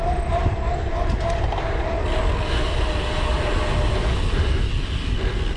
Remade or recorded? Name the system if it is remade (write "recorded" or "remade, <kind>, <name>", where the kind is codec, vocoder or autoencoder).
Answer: recorded